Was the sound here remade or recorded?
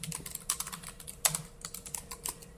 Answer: recorded